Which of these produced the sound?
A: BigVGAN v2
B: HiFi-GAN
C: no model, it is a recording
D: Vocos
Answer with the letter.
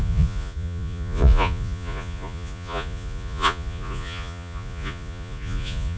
D